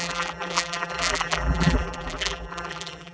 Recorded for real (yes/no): no